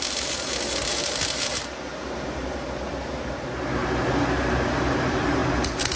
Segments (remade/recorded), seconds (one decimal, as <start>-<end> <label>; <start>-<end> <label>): 0.0-1.6 remade; 1.6-4.7 recorded; 4.7-5.4 remade; 5.4-6.0 recorded